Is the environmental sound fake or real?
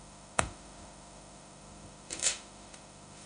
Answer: fake